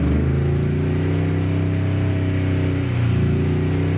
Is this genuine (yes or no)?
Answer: yes